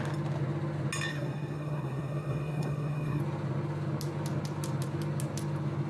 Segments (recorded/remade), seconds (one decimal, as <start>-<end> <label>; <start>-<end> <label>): 0.0-1.1 recorded; 1.1-3.2 remade; 3.2-5.9 recorded